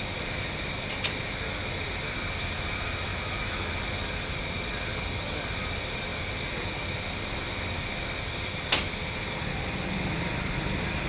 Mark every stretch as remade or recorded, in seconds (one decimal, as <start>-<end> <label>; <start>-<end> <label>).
0.0-3.1 recorded; 3.1-3.7 remade; 3.7-11.1 recorded